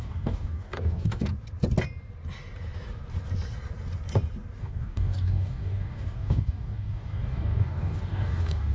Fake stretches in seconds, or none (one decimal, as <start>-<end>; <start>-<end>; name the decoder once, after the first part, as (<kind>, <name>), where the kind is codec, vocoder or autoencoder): 0.0-1.3 (codec, DAC); 4.6-8.7